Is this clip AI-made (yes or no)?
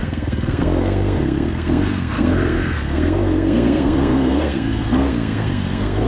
yes